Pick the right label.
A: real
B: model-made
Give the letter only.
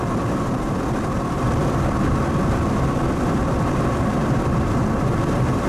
B